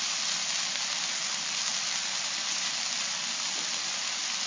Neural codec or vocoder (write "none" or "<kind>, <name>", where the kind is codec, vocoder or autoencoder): none